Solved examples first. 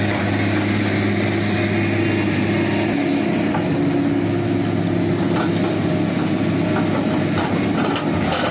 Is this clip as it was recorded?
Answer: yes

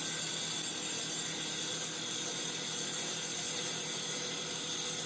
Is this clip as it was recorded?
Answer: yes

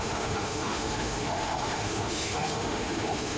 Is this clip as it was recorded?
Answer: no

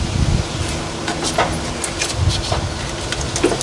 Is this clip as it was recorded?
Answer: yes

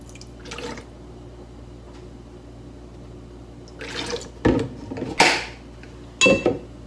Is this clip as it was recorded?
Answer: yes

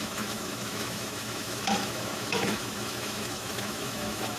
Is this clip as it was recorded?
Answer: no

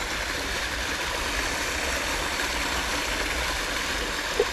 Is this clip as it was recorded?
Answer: yes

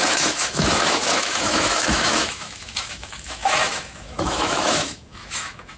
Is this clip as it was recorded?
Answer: no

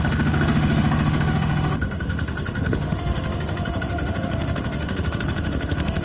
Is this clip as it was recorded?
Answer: no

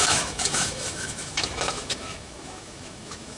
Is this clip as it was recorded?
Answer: no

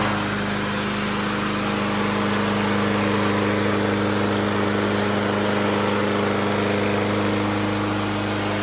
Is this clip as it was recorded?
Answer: yes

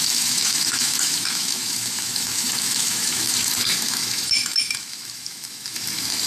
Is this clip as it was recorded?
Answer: no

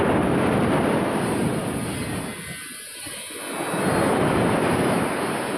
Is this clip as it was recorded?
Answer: yes